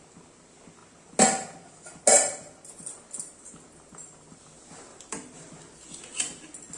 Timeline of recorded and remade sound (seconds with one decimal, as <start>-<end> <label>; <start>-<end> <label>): 0.0-4.9 recorded; 4.9-5.5 remade; 5.5-6.8 recorded